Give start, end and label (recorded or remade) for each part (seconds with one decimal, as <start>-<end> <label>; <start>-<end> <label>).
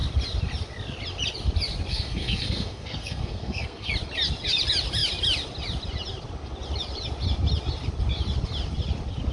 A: 0.0-1.9 recorded; 1.9-3.9 remade; 3.9-9.3 recorded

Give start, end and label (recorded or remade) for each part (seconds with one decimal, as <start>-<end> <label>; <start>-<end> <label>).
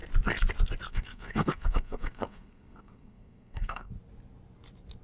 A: 0.0-0.9 recorded; 0.9-3.9 remade; 3.9-5.0 recorded